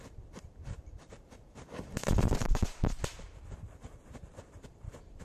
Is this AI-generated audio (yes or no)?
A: yes